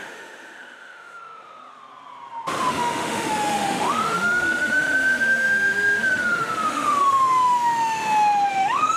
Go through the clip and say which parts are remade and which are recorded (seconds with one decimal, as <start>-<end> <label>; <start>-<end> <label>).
0.0-1.6 remade; 1.6-2.7 recorded; 2.7-8.0 remade; 8.0-8.5 recorded; 8.5-9.0 remade